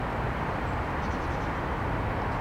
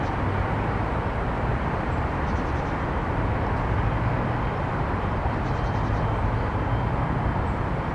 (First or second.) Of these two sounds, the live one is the first